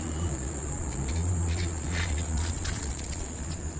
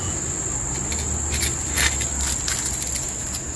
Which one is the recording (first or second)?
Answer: second